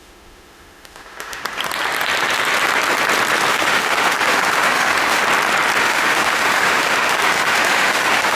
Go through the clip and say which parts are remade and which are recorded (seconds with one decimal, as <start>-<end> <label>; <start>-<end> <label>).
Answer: 0.0-1.4 remade; 1.4-3.5 recorded; 3.5-5.2 remade; 5.2-5.8 recorded; 5.8-8.3 remade